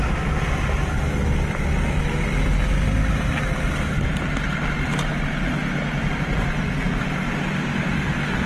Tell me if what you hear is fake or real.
real